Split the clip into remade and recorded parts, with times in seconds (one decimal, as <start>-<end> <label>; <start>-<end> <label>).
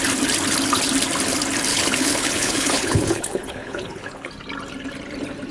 0.0-1.7 recorded; 1.7-4.3 remade; 4.3-5.5 recorded